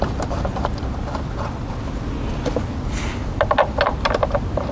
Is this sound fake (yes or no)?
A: no